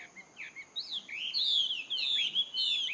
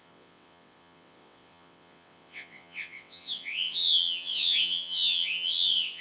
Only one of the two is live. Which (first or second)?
first